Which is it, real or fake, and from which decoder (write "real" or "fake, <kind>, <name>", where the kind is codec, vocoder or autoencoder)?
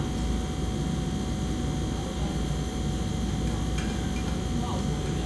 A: real